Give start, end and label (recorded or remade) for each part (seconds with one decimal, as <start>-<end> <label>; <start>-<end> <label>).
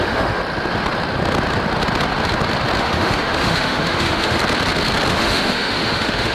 0.0-0.4 remade; 0.4-2.8 recorded; 2.8-4.4 remade; 4.4-5.1 recorded; 5.1-6.3 remade